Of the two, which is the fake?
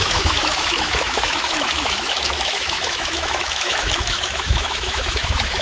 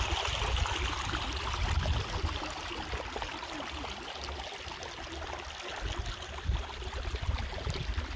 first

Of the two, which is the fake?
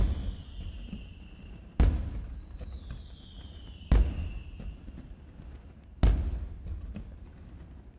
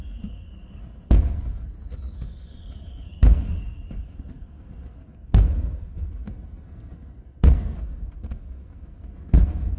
second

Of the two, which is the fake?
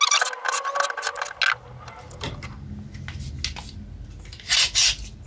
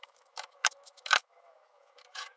second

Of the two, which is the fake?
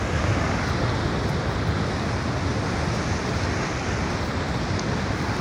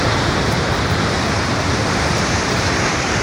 second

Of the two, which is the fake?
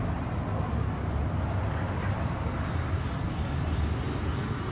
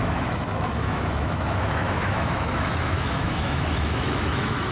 second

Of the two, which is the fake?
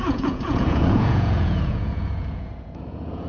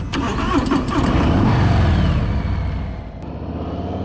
first